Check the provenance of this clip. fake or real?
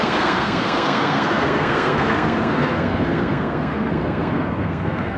fake